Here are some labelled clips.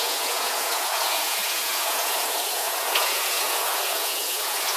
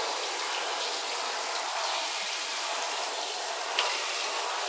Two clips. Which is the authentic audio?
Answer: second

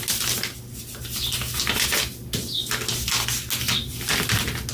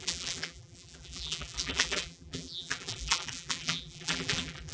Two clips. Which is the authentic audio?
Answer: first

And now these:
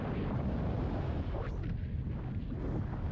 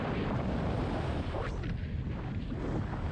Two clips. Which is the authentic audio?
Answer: first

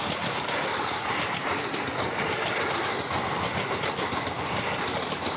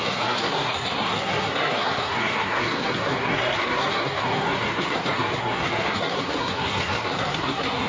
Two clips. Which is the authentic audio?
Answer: first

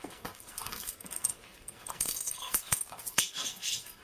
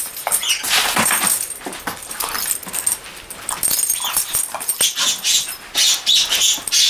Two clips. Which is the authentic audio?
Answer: second